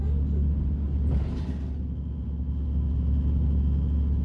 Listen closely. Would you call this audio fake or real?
real